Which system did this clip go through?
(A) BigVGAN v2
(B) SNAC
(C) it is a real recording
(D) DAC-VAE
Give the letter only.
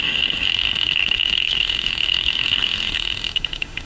D